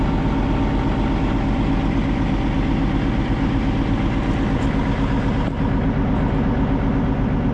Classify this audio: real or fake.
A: real